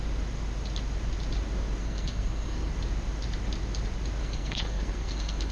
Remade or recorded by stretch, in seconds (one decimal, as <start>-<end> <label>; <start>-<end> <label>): 0.0-1.8 recorded; 1.8-2.7 remade; 2.7-4.2 recorded; 4.2-5.5 remade